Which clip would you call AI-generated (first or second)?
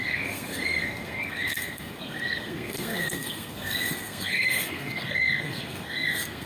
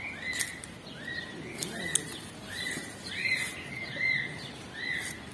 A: first